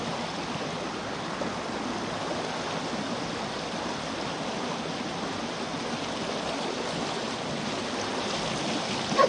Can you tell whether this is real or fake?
real